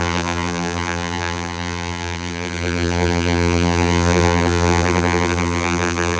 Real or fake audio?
fake